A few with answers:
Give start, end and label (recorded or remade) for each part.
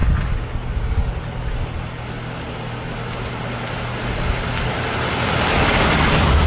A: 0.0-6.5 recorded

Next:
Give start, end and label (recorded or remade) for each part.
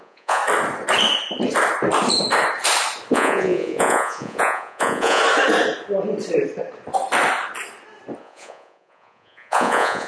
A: 0.0-0.4 remade; 0.4-3.1 recorded; 3.1-5.2 remade; 5.2-8.2 recorded; 8.2-10.1 remade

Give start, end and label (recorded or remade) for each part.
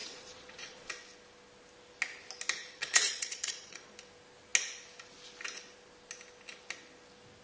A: 0.0-0.9 remade; 0.9-2.6 recorded; 2.6-3.8 remade; 3.8-7.4 recorded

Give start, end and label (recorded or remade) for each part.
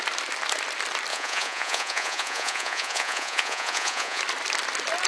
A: 0.0-1.1 recorded; 1.1-4.2 remade; 4.2-5.1 recorded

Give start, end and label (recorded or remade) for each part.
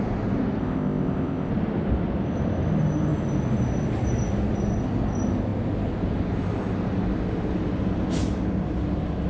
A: 0.0-0.6 recorded; 0.6-1.5 remade; 1.5-9.3 recorded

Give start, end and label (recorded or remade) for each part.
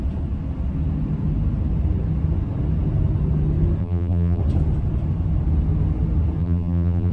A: 0.0-3.8 recorded; 3.8-4.4 remade; 4.4-6.4 recorded; 6.4-7.1 remade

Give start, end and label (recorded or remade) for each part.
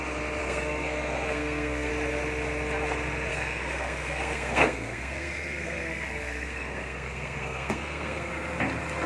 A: 0.0-0.4 recorded; 0.4-1.9 remade; 1.9-3.3 recorded; 3.3-8.3 remade; 8.3-9.1 recorded